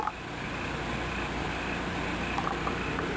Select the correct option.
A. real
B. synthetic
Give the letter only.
A